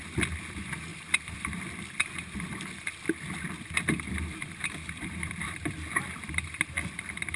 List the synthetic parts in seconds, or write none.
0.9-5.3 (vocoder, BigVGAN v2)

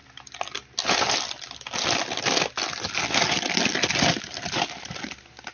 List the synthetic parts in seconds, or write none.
none

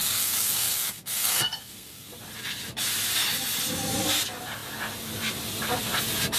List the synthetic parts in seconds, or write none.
0.0-2.1 (codec, SNAC)

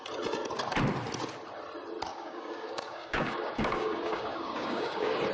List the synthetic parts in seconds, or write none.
2.1-5.3 (codec, DAC)

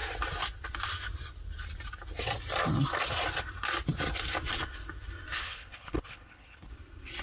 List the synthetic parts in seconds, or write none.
5.4-6.7 (codec, HILCodec)